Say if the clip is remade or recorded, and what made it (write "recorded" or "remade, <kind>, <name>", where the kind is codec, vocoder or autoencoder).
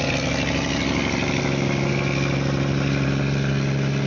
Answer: recorded